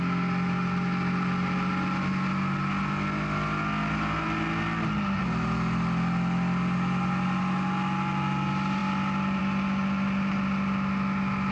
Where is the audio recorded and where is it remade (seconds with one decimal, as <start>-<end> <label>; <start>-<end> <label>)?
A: 0.0-11.5 recorded